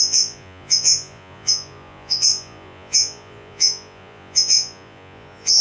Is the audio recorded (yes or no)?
no